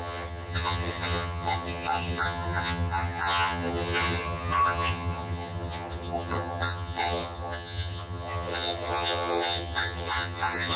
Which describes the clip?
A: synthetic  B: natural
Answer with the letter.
A